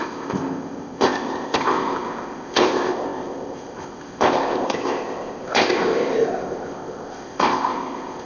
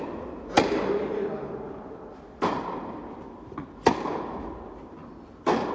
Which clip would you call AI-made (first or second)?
first